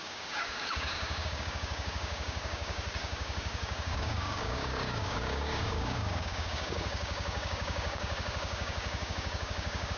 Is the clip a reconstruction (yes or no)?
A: yes